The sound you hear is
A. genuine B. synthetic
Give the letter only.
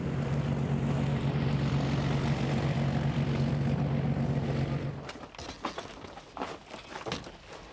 A